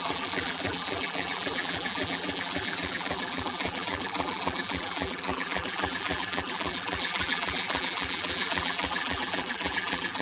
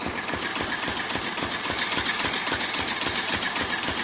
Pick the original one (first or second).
second